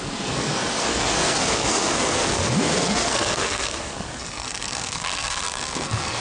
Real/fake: fake